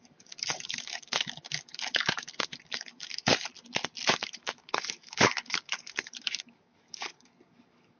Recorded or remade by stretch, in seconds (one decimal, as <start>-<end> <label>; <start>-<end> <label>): 0.0-3.3 remade; 3.3-4.1 recorded; 4.1-8.0 remade